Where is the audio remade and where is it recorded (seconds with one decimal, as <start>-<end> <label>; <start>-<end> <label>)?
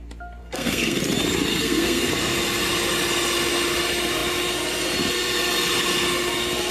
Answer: 0.0-0.4 recorded; 0.4-1.0 remade; 1.0-1.5 recorded; 1.5-2.1 remade; 2.1-6.7 recorded